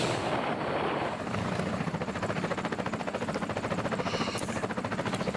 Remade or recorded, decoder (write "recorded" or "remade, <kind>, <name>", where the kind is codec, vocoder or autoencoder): recorded